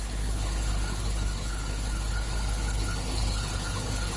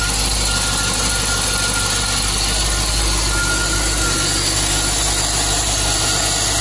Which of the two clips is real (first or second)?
second